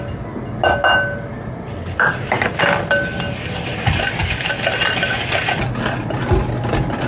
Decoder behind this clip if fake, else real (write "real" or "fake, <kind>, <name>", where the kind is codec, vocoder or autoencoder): real